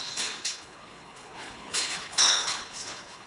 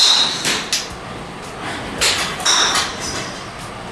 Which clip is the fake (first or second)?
first